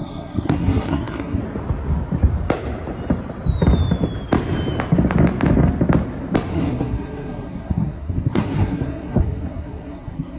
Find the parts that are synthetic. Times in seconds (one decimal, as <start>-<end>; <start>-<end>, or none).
0.0-1.4; 6.5-10.4